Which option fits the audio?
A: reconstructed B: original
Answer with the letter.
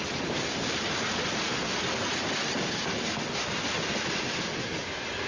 B